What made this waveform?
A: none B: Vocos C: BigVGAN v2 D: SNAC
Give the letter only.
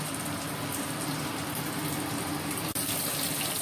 A